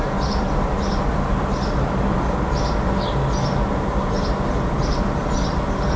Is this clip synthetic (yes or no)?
no